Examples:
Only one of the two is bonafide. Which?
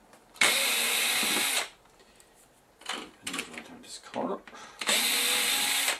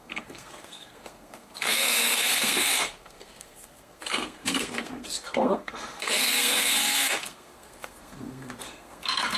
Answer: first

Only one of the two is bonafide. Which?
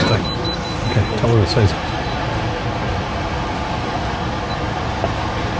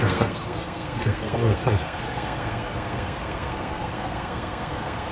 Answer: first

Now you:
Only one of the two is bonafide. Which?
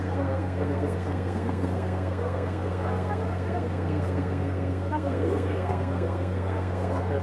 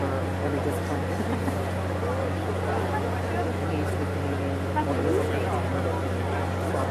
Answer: second